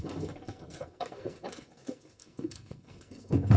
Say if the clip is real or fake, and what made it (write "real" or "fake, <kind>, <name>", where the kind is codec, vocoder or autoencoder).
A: fake, codec, SNAC